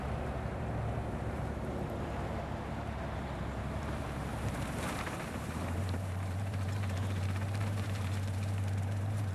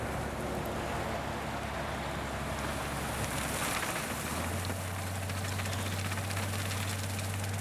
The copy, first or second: first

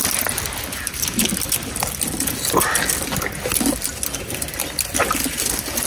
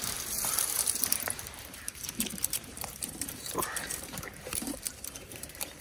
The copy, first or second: second